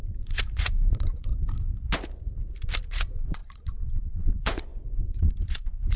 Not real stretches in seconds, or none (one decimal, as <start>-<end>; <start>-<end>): 0.0-1.3; 2.9-6.0